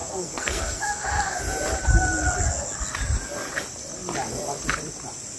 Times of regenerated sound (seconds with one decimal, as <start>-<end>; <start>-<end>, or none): 0.0-1.4